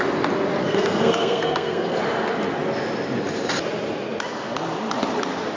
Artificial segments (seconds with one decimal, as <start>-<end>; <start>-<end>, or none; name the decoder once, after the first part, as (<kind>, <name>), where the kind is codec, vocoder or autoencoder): 0.6-2.0 (codec, SNAC)